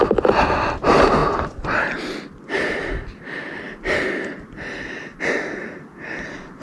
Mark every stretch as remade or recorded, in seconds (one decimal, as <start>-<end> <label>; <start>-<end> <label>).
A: 0.0-6.6 recorded